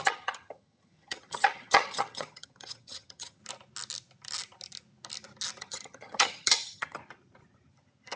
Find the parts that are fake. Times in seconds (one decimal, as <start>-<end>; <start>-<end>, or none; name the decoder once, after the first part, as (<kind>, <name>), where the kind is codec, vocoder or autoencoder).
0.0-3.4 (vocoder, HiFi-GAN); 5.6-7.0